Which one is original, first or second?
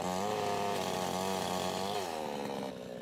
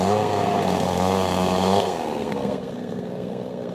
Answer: first